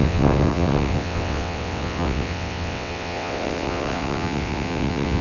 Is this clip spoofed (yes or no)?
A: yes